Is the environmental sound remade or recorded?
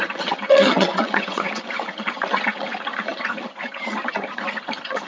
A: remade